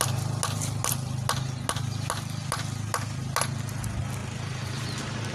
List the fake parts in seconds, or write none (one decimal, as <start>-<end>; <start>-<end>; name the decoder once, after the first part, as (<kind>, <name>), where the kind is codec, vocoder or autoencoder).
4.2-5.3 (vocoder, BigVGAN v2)